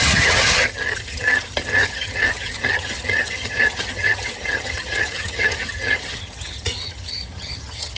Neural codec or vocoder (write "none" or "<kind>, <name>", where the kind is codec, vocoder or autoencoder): vocoder, HiFi-GAN